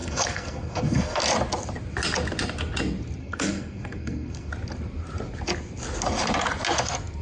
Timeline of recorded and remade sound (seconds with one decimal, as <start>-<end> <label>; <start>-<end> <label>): 0.0-1.2 remade; 1.2-3.2 recorded; 3.2-4.5 remade; 4.5-7.2 recorded